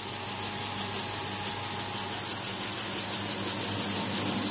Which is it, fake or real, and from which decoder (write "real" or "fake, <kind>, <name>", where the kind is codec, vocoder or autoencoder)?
real